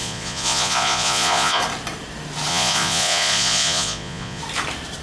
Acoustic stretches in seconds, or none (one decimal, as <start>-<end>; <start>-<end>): 1.6-2.5; 4.4-5.0